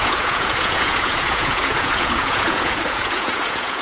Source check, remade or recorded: remade